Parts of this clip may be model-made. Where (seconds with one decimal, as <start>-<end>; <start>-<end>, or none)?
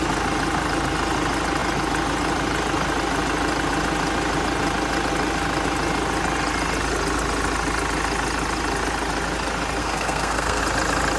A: 9.8-10.6